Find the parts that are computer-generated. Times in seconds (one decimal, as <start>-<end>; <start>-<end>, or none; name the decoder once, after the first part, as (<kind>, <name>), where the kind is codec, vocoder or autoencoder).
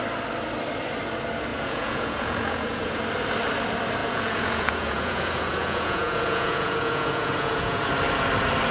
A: 1.5-3.0 (vocoder, Vocos); 4.0-7.9